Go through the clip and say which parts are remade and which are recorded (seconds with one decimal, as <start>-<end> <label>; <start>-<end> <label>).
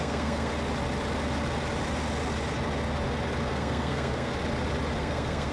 0.0-0.5 remade; 0.5-3.5 recorded; 3.5-4.3 remade; 4.3-5.0 recorded; 5.0-5.5 remade